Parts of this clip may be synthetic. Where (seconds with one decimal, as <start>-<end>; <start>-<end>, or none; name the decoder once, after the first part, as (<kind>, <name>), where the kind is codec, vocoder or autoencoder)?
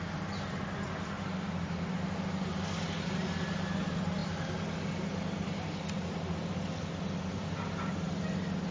none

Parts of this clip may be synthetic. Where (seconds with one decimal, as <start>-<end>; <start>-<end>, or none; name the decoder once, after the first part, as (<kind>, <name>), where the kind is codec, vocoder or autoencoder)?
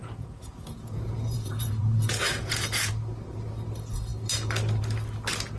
0.0-2.9 (vocoder, Vocos)